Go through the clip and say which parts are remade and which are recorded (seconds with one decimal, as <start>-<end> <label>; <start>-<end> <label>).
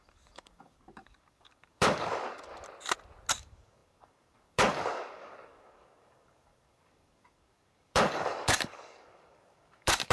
0.0-2.5 remade; 2.5-3.3 recorded; 3.3-10.1 remade